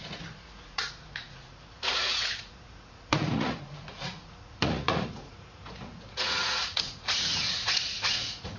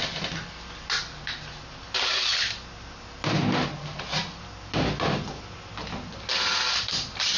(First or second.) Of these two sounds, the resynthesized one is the first